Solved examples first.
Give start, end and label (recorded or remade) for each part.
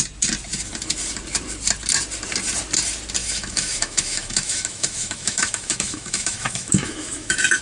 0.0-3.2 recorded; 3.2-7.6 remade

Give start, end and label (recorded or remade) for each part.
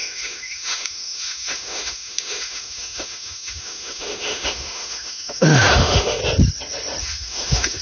0.0-6.2 remade; 6.2-7.0 recorded; 7.0-7.8 remade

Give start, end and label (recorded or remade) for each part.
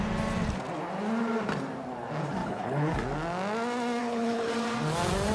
0.0-2.4 recorded; 2.4-2.9 remade; 2.9-4.0 recorded; 4.0-4.5 remade; 4.5-5.3 recorded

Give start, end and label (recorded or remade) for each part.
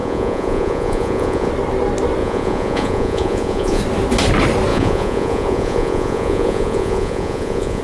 0.0-1.5 remade; 1.5-2.2 recorded; 2.2-3.8 remade; 3.8-4.7 recorded; 4.7-7.8 remade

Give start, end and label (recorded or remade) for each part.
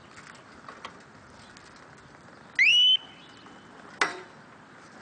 0.0-5.0 recorded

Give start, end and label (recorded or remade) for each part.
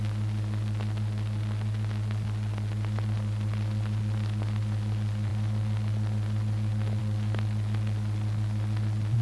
0.0-9.2 recorded